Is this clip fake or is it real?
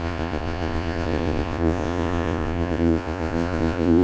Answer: fake